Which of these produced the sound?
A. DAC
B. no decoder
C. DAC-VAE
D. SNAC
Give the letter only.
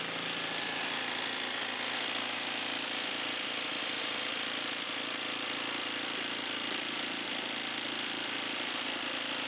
B